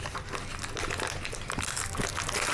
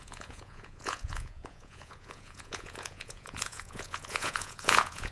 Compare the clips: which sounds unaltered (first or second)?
first